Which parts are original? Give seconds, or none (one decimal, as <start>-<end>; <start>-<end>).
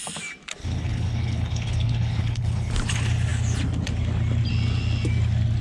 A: 0.0-0.6; 2.7-5.6